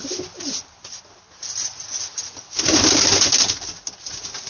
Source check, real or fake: real